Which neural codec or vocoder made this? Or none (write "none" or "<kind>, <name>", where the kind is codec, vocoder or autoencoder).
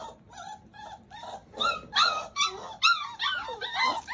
none